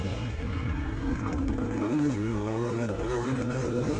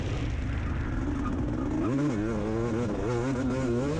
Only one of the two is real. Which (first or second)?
second